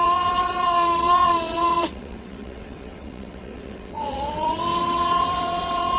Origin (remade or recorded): remade